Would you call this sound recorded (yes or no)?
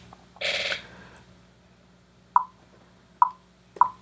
yes